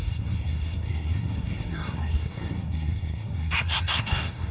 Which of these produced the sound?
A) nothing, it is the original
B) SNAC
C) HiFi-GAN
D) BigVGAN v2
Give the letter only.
B